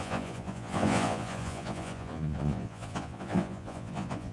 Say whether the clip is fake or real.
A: fake